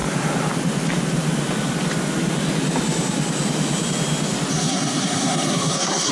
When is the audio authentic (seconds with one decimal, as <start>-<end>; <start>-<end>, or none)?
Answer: 0.0-4.5